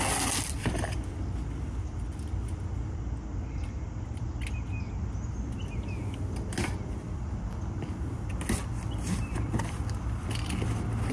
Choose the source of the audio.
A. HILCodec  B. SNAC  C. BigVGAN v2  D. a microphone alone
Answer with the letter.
D